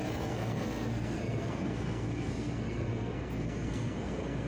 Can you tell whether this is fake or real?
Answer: fake